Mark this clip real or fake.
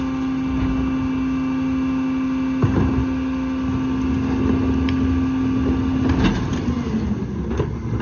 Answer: real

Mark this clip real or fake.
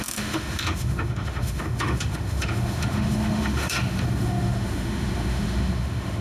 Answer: fake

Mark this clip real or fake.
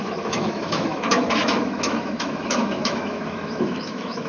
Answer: fake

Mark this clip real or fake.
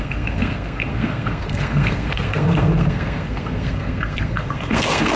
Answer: fake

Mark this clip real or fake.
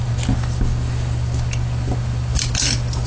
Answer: real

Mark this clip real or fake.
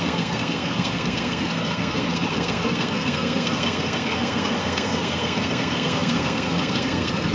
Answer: fake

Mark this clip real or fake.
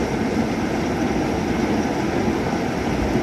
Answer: real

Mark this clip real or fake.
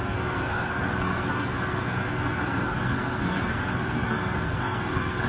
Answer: fake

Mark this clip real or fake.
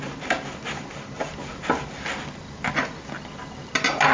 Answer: real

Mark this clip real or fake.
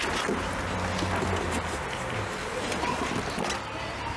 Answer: real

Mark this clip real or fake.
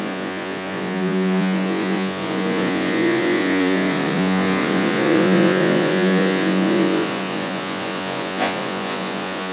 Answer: fake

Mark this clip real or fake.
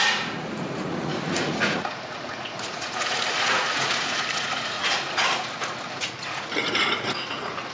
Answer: fake